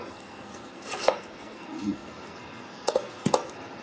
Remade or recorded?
remade